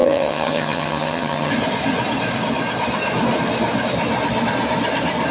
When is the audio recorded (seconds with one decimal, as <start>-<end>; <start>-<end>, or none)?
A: 1.5-5.3